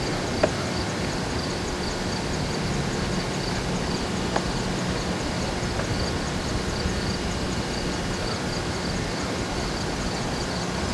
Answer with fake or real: real